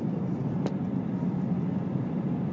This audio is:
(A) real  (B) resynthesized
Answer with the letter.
B